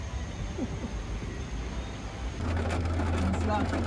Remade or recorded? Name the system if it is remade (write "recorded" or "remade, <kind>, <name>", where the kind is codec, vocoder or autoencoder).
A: recorded